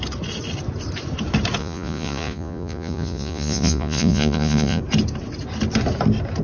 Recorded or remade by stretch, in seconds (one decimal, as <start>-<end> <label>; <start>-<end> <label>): 0.0-1.6 recorded; 1.6-4.8 remade; 4.8-6.4 recorded